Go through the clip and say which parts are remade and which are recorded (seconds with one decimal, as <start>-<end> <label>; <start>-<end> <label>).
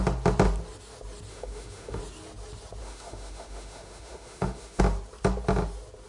0.0-1.3 recorded; 1.3-2.0 remade; 2.0-2.8 recorded; 2.8-4.8 remade; 4.8-6.1 recorded